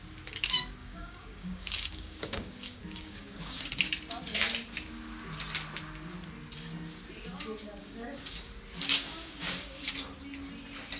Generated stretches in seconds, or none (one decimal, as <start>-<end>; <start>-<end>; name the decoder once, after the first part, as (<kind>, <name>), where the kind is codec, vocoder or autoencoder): 0.8-3.7 (codec, DAC); 7.8-8.5; 8.9-9.9